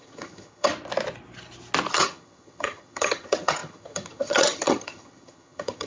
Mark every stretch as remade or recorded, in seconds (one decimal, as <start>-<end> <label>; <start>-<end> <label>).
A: 0.0-0.7 remade; 0.7-1.9 recorded; 1.9-5.9 remade